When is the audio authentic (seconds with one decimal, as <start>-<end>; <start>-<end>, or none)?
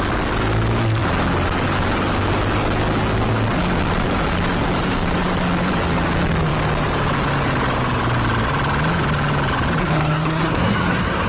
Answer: 0.0-9.8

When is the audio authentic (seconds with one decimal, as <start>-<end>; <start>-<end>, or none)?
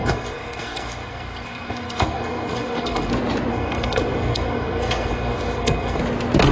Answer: 3.1-3.5; 6.0-6.5